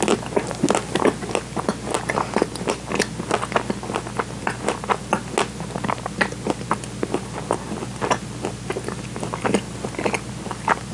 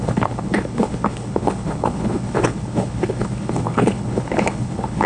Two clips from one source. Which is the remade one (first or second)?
second